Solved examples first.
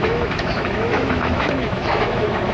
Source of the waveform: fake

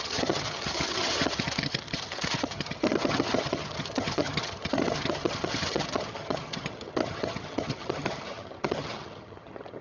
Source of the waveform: fake